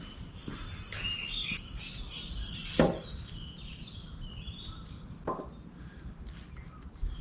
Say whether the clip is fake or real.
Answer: real